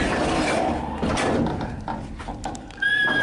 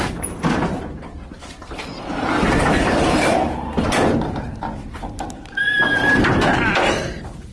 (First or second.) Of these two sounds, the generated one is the second